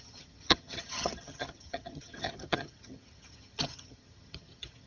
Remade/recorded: remade